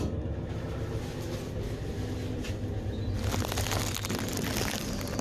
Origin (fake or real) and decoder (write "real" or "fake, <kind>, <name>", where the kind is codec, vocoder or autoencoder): real